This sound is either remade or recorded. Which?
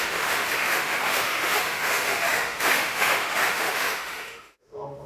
remade